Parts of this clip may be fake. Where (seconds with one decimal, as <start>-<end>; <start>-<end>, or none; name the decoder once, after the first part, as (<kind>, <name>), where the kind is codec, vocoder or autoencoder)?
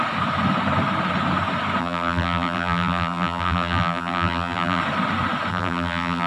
1.8-4.8 (vocoder, BigVGAN v2); 5.5-6.3